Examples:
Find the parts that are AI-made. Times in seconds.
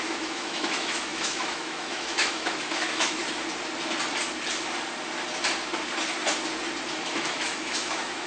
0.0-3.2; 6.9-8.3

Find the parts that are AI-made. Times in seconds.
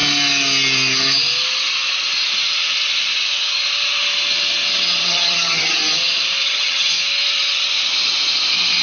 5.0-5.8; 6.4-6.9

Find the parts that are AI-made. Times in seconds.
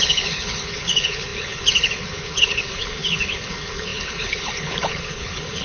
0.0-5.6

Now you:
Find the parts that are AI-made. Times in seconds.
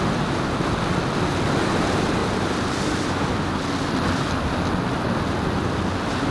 2.2-3.6